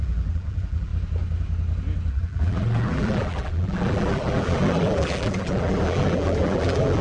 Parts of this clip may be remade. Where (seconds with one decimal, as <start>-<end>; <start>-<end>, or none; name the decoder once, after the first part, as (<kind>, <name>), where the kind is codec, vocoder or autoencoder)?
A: 0.0-0.9 (vocoder, BigVGAN v2); 2.1-7.0